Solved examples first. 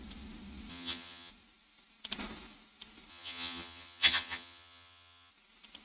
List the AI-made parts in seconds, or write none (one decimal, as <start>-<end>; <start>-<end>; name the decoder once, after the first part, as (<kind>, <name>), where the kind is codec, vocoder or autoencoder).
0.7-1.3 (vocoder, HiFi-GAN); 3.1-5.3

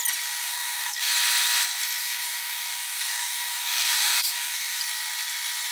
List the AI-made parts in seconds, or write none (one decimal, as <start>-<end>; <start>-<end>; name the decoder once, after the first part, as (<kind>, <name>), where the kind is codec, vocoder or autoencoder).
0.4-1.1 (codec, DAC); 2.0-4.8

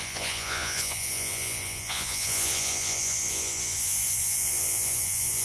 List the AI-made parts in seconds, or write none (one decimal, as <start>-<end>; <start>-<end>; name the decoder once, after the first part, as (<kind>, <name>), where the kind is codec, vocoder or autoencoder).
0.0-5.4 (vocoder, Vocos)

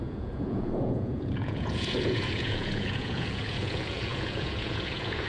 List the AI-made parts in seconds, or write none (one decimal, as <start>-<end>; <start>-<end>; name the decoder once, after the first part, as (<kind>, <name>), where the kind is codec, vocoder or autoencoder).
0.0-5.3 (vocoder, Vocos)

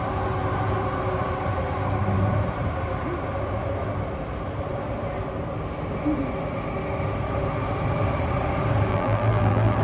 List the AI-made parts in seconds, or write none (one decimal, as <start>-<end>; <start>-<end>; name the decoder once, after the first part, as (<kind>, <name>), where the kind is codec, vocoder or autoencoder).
8.9-9.8 (vocoder, BigVGAN v2)